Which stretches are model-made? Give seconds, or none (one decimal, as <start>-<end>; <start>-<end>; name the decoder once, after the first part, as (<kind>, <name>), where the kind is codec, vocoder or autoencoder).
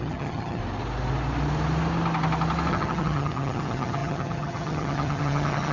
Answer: 0.0-0.6 (vocoder, HiFi-GAN); 2.7-5.7